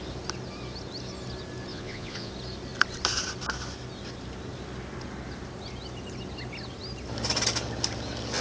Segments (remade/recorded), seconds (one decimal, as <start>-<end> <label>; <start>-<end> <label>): 0.0-1.7 recorded; 1.7-2.3 remade; 2.3-8.4 recorded